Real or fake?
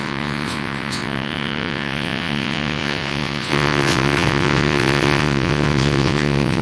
fake